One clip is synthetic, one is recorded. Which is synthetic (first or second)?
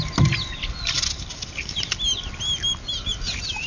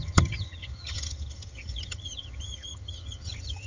second